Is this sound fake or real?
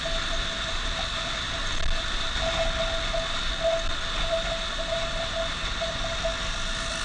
real